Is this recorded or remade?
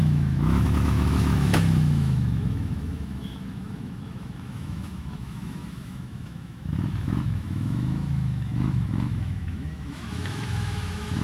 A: remade